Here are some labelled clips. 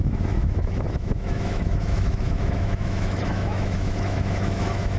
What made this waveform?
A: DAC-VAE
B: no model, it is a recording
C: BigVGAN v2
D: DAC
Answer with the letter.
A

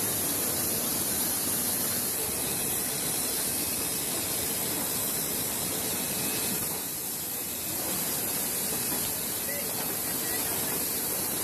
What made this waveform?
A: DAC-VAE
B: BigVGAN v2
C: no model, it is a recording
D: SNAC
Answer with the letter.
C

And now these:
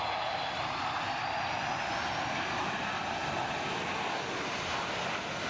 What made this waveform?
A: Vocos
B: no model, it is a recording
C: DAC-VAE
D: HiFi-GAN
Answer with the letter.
B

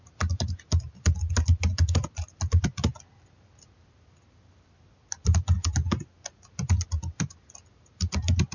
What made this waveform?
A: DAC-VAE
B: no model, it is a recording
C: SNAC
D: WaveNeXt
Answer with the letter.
B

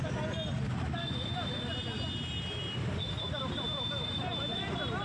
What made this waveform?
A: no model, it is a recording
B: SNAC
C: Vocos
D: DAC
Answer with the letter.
A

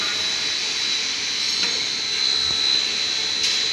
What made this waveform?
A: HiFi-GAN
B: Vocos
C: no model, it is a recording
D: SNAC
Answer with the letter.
C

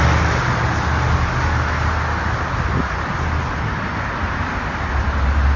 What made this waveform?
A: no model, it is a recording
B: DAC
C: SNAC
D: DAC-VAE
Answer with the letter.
A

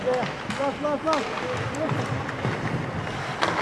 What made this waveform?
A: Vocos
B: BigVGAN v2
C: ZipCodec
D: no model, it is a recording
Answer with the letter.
D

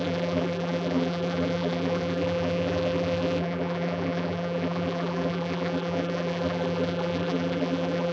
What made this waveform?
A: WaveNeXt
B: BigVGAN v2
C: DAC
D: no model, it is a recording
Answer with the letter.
B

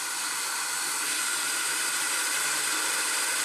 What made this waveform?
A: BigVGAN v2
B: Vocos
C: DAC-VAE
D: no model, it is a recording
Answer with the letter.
A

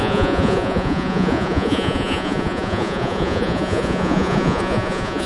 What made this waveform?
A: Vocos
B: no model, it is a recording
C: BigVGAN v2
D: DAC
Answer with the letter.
A